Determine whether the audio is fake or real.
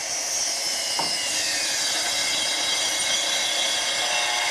real